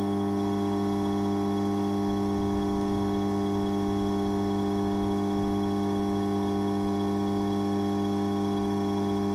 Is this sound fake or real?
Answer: real